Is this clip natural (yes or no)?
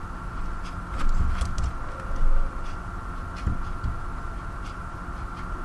yes